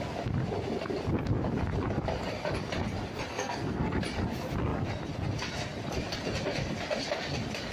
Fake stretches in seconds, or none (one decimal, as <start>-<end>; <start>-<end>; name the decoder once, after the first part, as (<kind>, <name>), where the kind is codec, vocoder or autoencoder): 3.3-4.0 (codec, SNAC)